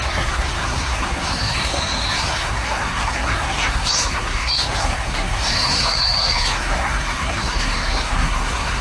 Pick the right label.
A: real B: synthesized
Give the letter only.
B